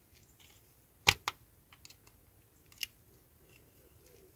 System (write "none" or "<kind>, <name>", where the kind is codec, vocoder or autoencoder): none